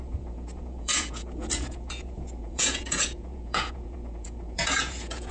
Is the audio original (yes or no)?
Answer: no